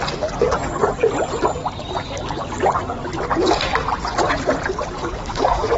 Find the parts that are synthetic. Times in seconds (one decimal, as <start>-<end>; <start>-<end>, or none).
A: 5.0-5.8